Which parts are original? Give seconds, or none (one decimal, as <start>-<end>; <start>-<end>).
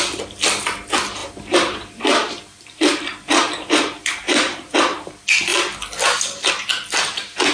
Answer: 0.0-1.2; 5.1-7.5